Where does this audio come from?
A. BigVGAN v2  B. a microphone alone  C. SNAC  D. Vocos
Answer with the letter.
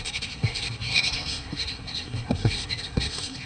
C